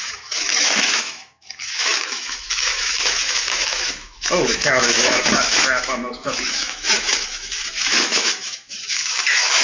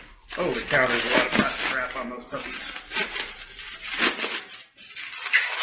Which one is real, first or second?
second